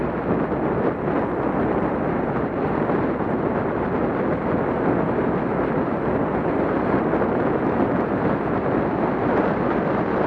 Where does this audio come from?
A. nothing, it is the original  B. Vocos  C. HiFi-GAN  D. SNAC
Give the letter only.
A